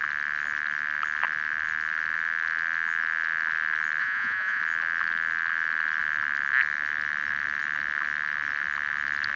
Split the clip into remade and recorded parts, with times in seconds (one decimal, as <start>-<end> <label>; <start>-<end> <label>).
0.0-4.0 recorded; 4.0-4.6 remade; 4.6-9.4 recorded